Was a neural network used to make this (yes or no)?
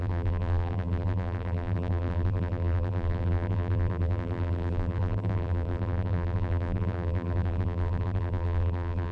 yes